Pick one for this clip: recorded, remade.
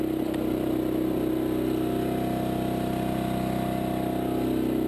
recorded